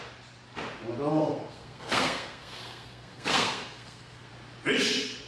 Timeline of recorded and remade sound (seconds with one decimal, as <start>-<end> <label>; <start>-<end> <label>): 0.0-1.1 recorded; 1.1-4.3 remade; 4.3-5.3 recorded